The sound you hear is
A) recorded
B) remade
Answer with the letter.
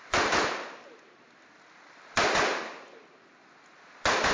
A